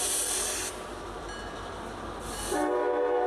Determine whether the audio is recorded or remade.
recorded